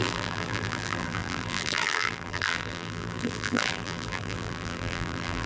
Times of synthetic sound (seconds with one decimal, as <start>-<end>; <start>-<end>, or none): 0.0-5.5